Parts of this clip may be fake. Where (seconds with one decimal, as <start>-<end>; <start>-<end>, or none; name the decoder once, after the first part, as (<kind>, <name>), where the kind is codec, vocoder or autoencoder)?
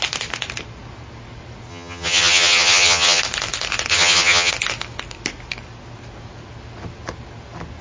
1.7-3.2 (vocoder, HiFi-GAN); 3.9-4.5